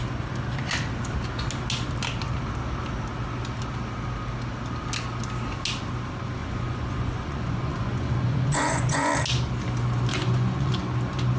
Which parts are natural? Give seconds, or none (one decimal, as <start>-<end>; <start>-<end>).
0.0-6.4; 9.1-10.1; 10.7-11.4